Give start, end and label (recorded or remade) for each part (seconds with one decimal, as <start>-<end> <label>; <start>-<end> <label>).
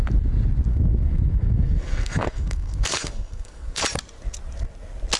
0.0-0.7 recorded; 0.7-3.8 remade; 3.8-5.2 recorded